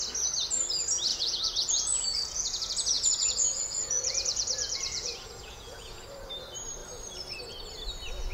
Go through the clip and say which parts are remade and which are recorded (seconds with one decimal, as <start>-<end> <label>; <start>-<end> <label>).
0.0-1.1 recorded; 1.1-6.1 remade; 6.1-8.3 recorded